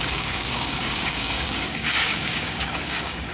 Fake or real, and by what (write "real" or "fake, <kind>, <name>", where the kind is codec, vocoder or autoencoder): fake, codec, DAC